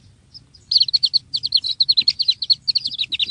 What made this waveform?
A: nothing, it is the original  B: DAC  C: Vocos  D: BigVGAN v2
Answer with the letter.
A